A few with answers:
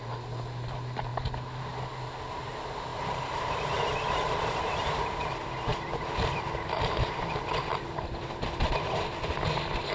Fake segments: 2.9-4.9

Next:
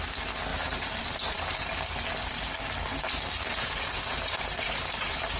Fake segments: 0.5-1.7; 3.4-5.4

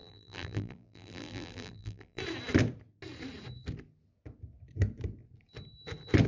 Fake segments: 0.0-2.2

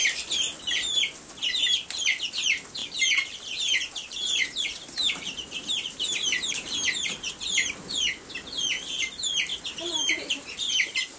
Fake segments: 2.8-7.3; 9.5-11.2

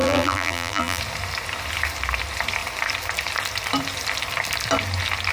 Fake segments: 0.0-1.0

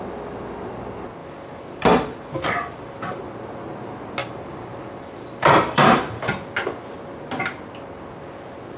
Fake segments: 1.2-3.3; 4.2-6.3